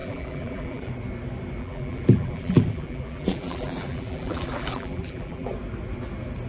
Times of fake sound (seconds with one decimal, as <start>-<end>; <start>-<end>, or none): 0.0-0.9; 1.6-5.5